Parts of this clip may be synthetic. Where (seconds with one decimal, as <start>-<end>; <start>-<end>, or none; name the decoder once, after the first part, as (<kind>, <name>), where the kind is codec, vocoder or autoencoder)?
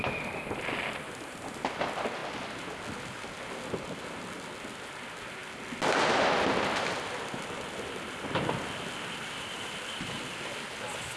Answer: none